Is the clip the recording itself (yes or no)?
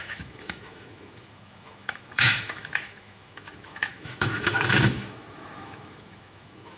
no